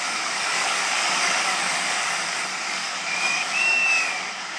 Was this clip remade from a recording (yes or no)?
yes